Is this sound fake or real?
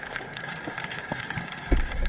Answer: fake